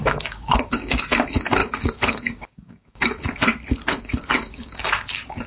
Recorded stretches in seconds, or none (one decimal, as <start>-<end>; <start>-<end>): 3.5-4.0